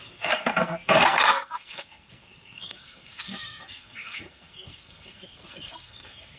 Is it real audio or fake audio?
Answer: fake